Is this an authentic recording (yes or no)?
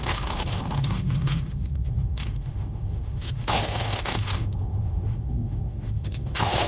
no